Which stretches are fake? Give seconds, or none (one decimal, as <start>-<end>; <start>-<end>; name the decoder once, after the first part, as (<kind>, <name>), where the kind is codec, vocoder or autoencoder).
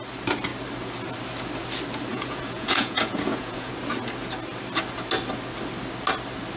2.1-3.7 (vocoder, Vocos)